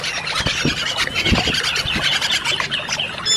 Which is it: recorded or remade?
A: recorded